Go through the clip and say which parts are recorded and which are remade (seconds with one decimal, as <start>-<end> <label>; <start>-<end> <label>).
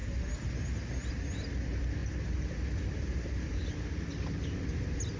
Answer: 0.0-2.0 recorded; 2.0-3.5 remade; 3.5-5.2 recorded